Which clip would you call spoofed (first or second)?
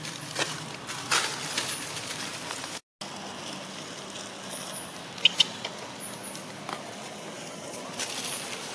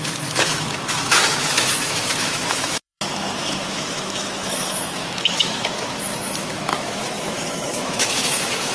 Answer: second